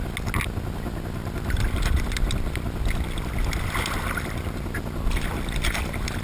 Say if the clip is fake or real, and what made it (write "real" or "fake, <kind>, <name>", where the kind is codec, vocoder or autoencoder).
real